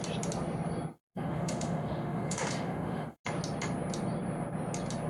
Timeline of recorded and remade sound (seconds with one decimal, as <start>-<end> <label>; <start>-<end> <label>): 0.0-1.0 recorded; 1.0-3.2 remade; 3.2-5.1 recorded